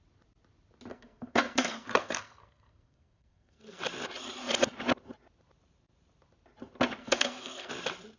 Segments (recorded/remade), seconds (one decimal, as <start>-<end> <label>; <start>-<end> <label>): 0.0-0.9 recorded; 0.9-3.8 remade; 3.8-7.0 recorded; 7.0-7.7 remade; 7.7-8.2 recorded